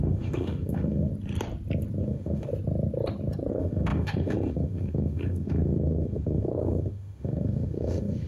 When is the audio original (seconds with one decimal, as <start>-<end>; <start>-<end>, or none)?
1.1-2.0; 2.5-3.5